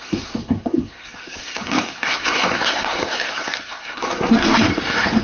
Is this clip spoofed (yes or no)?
yes